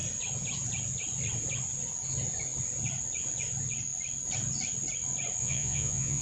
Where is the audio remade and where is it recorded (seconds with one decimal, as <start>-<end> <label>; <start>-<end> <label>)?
0.0-5.4 recorded; 5.4-6.2 remade